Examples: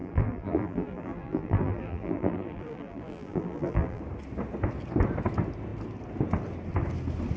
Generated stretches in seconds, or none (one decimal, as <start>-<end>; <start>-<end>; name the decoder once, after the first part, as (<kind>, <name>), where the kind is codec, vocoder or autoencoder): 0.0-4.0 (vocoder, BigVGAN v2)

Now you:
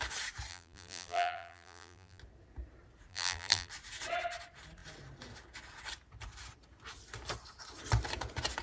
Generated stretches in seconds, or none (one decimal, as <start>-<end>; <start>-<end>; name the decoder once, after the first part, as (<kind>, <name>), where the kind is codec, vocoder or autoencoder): 0.5-2.2 (vocoder, BigVGAN v2); 3.1-3.7

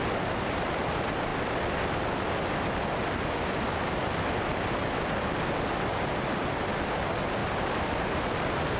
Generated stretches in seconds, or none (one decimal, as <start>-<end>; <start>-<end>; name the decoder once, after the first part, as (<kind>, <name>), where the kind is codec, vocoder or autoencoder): 7.4-8.2 (vocoder, BigVGAN v2)

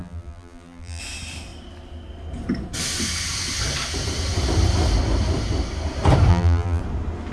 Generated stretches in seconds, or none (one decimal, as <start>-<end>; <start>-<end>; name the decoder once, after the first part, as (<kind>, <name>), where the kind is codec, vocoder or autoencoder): 0.0-1.0 (vocoder, BigVGAN v2); 6.3-6.8

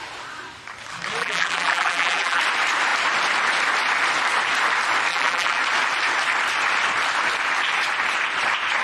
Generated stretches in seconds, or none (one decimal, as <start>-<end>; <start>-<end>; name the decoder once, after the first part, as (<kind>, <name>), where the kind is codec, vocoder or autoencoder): 1.2-2.4 (vocoder, BigVGAN v2); 5.1-5.6